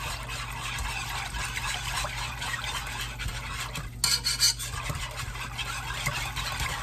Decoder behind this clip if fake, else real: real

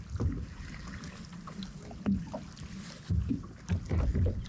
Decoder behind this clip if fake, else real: real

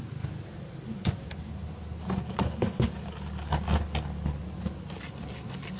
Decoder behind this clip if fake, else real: real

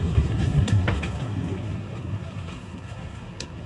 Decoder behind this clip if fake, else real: fake, codec, SNAC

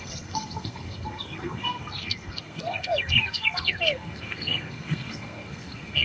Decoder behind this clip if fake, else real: fake, codec, SNAC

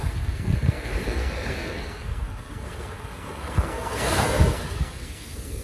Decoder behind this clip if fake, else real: fake, codec, SNAC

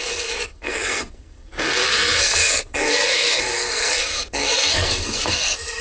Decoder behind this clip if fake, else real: fake, codec, SNAC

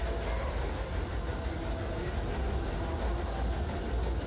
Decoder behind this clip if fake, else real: real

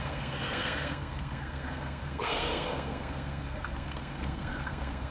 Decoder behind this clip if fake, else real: fake, codec, SNAC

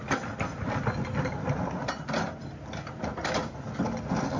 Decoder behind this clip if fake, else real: real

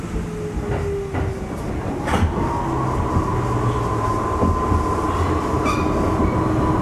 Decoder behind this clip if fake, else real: real